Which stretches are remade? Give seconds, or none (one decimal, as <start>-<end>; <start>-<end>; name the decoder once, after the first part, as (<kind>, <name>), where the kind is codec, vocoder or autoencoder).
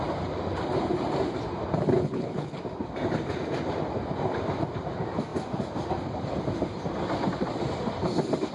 2.0-2.6 (codec, HILCodec)